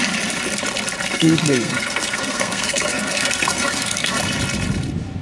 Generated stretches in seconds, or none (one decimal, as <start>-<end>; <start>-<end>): 1.1-4.2